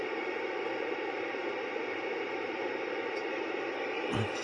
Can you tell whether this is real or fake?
fake